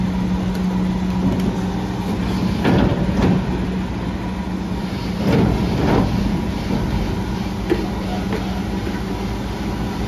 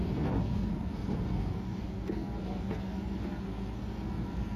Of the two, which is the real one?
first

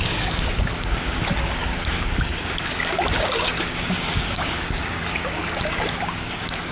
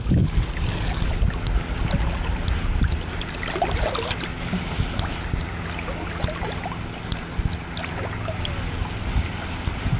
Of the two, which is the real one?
second